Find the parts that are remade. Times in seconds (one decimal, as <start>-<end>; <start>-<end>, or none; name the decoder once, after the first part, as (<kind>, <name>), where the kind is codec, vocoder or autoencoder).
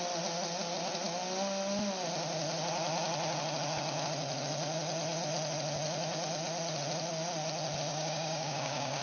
7.9-9.0 (codec, DAC)